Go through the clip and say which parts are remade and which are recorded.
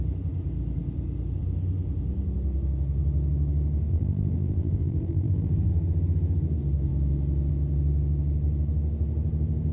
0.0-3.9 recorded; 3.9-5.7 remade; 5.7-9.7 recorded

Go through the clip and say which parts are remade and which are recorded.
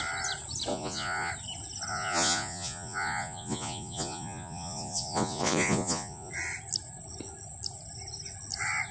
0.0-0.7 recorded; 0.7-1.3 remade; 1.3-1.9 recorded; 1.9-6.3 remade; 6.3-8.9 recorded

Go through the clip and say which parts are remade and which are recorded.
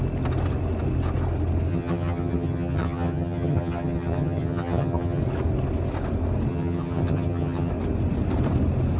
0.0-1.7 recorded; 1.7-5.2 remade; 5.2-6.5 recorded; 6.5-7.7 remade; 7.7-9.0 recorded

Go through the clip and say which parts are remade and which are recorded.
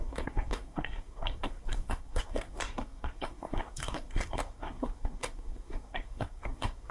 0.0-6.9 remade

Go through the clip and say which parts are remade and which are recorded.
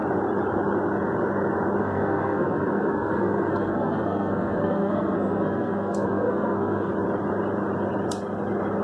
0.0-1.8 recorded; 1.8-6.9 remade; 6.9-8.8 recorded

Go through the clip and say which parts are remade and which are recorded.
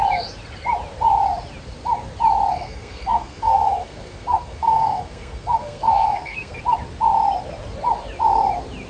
0.0-2.5 recorded; 2.5-6.6 remade; 6.6-8.9 recorded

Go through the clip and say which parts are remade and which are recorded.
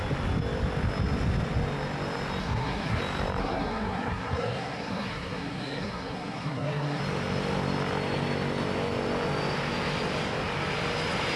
0.0-2.4 recorded; 2.4-3.0 remade; 3.0-3.4 recorded; 3.4-7.0 remade; 7.0-11.4 recorded